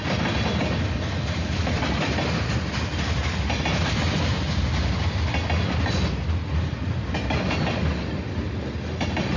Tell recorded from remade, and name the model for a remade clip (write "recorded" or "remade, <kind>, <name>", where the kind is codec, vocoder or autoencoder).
recorded